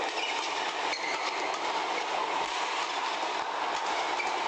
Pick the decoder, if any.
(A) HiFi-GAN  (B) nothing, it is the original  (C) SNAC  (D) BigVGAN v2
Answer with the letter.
B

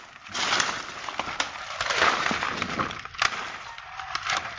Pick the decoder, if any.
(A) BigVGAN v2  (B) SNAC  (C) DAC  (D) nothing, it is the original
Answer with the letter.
D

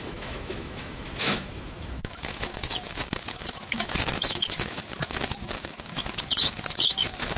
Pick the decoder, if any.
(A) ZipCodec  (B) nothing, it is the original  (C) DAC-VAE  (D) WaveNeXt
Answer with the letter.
C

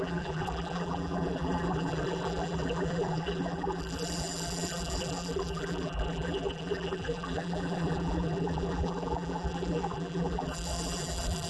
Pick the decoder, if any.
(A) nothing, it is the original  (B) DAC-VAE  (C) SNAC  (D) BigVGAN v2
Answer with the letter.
D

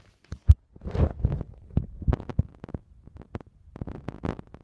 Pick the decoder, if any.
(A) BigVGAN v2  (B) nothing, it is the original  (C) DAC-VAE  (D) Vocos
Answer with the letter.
B